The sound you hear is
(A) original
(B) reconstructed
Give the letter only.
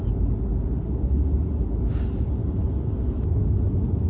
A